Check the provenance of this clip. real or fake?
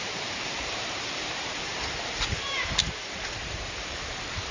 fake